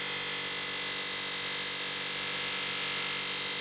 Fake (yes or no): no